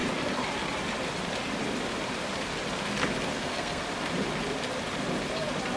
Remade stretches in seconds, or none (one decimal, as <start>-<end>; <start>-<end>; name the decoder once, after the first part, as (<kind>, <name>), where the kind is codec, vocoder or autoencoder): 3.3-3.8 (codec, SNAC)